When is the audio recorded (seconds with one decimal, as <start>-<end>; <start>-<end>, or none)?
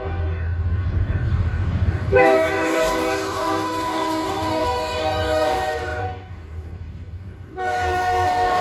none